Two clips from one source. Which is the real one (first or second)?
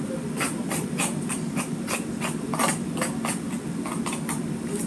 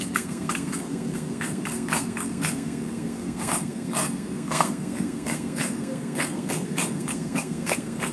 first